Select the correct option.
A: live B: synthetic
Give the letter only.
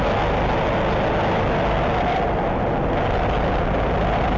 A